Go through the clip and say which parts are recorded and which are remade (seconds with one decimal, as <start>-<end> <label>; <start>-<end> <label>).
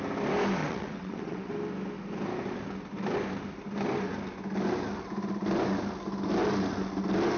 0.0-0.6 recorded; 0.6-1.5 remade; 1.5-7.4 recorded